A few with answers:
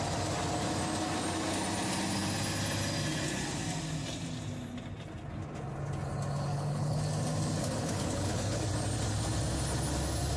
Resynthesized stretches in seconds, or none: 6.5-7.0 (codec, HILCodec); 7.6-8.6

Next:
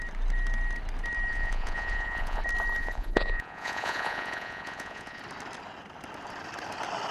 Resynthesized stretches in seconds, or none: 1.3-2.4 (vocoder, Vocos); 2.8-5.2

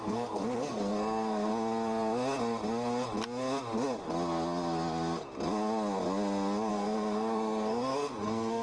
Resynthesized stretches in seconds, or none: 0.0-1.5 (codec, SNAC); 6.7-8.6

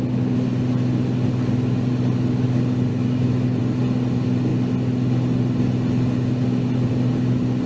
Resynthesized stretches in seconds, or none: 2.9-3.6 (autoencoder, DAC-VAE)

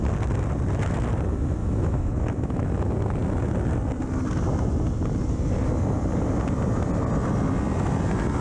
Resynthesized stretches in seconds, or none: 1.6-2.7 (autoencoder, DAC-VAE)